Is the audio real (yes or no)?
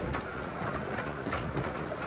no